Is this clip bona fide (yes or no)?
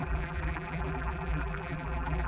no